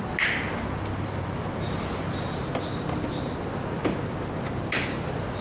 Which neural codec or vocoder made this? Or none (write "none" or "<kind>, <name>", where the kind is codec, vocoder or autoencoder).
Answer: none